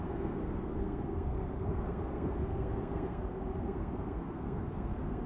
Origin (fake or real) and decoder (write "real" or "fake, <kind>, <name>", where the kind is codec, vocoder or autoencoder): fake, codec, SNAC